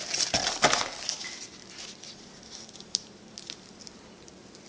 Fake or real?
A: real